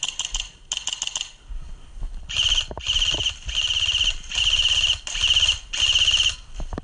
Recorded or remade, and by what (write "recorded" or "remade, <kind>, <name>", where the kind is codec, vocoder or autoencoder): recorded